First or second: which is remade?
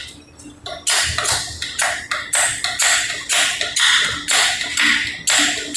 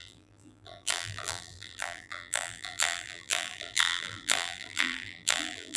second